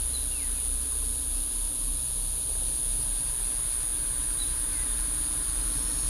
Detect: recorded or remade recorded